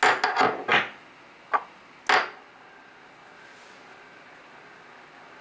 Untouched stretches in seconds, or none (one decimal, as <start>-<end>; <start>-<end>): 0.0-5.4